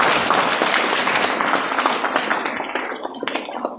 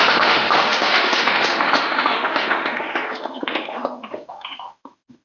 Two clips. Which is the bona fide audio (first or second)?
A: first